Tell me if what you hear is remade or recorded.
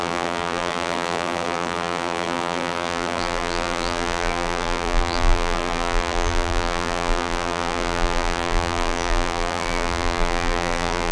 remade